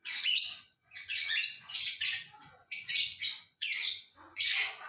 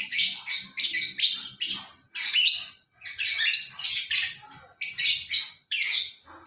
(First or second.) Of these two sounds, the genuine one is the second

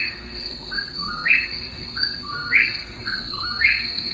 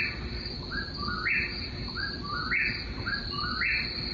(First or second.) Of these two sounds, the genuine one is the second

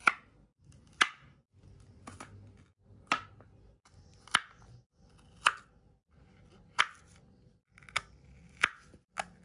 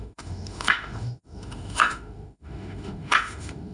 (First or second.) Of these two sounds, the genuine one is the first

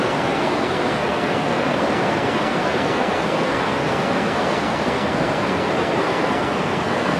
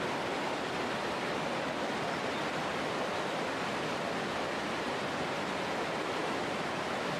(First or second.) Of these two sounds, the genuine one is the second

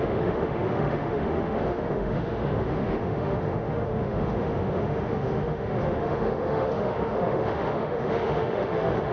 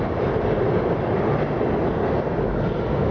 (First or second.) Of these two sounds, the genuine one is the second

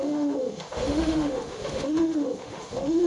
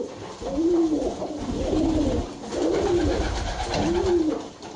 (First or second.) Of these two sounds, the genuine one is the second